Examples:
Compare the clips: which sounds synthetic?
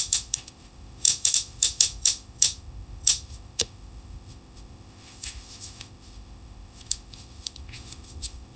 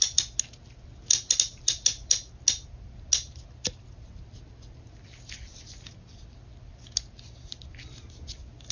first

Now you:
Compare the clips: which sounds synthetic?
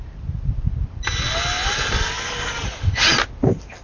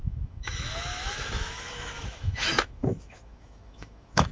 second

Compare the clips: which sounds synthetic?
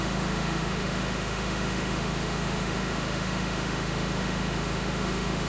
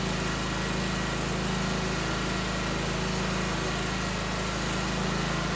first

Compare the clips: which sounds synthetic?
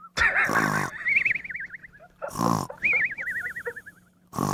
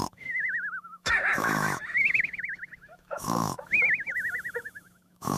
second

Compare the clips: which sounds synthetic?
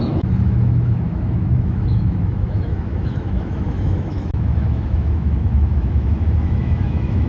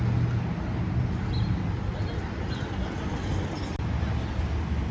first